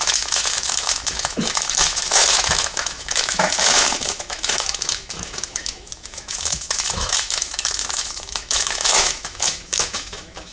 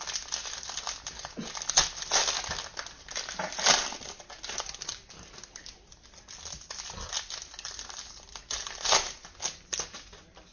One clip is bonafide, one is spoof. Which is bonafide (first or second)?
second